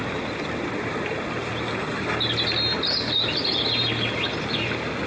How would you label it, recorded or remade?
recorded